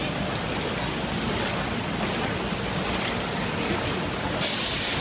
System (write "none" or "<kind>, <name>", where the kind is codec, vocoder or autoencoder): none